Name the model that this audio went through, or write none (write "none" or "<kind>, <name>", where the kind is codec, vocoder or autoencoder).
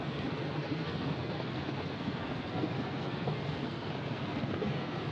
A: codec, SNAC